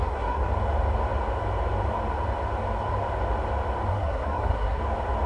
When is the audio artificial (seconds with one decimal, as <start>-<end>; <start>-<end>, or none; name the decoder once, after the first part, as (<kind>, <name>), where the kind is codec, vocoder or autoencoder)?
0.0-0.5 (codec, SNAC); 3.9-4.8